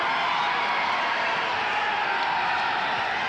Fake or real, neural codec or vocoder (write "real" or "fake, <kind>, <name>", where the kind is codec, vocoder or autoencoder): real